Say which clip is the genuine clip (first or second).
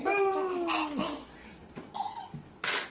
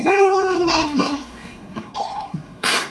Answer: first